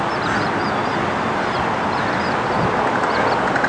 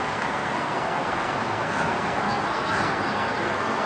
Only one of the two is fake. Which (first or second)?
second